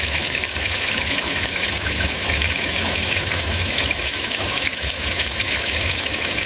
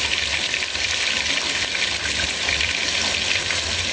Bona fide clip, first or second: second